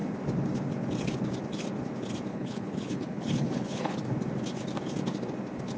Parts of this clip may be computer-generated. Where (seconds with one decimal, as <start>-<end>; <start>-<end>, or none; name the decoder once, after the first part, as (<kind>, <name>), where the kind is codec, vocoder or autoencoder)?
2.3-4.0 (codec, HILCodec)